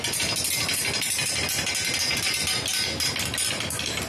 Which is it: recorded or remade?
recorded